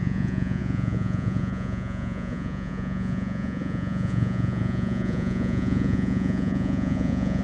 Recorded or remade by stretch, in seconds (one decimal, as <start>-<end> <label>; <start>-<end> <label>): 0.0-7.4 remade